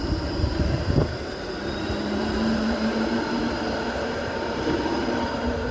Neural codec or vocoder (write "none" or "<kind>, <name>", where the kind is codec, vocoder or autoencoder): vocoder, BigVGAN v2